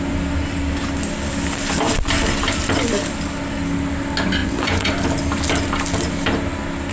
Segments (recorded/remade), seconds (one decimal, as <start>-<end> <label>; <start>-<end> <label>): 0.0-4.4 recorded; 4.4-4.9 remade; 4.9-6.9 recorded